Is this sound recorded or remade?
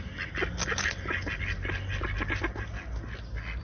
recorded